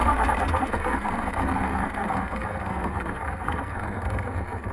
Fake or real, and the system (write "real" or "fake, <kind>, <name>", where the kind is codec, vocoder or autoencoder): fake, codec, SNAC